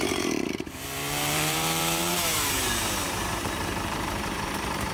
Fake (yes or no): yes